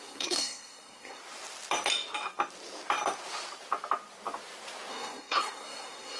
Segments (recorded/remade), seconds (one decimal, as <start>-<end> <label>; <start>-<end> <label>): 0.0-1.2 remade; 1.2-4.9 recorded; 4.9-6.2 remade